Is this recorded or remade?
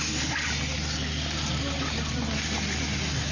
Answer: recorded